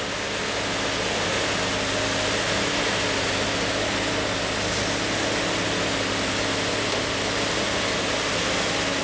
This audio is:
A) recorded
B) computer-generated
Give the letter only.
A